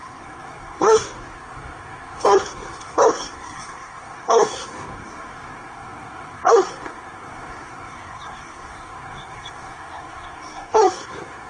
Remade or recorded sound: remade